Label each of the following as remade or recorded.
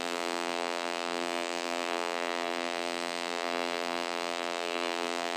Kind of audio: remade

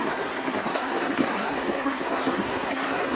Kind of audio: remade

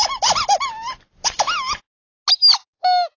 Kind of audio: recorded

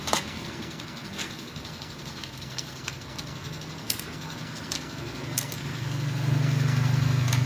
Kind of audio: remade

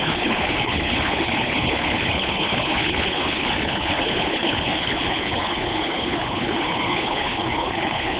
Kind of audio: remade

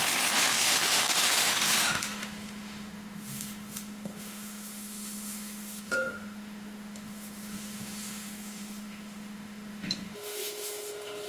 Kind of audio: remade